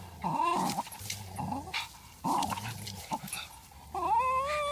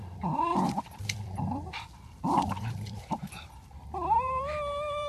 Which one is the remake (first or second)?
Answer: second